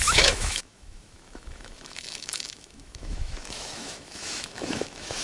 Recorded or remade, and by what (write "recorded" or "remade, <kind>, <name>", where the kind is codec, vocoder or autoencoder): remade, autoencoder, DAC-VAE